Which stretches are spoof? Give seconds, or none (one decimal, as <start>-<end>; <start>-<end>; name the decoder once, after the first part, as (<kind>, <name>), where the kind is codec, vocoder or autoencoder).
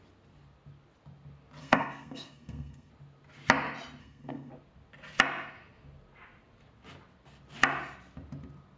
1.6-2.9 (codec, SNAC); 4.0-4.5